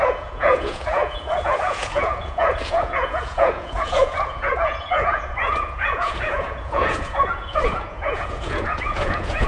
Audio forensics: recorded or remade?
remade